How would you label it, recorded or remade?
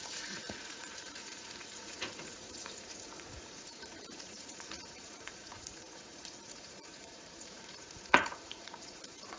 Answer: remade